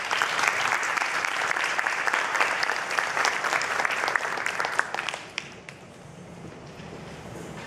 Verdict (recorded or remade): remade